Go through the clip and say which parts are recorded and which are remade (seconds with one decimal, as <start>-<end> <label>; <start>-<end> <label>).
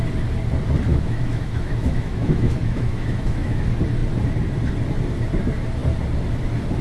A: 0.0-0.9 recorded; 0.9-3.6 remade; 3.6-6.8 recorded